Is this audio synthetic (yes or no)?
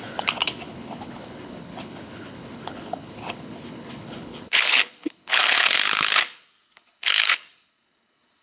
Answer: yes